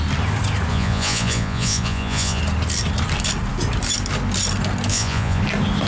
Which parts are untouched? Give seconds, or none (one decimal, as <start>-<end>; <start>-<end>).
0.0-0.7; 2.4-4.9; 5.4-5.9